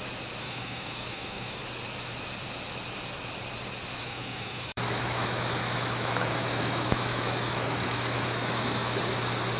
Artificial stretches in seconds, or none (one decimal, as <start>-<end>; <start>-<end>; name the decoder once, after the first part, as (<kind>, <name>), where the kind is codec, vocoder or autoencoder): 0.4-1.6 (autoencoder, DAC-VAE); 3.9-9.0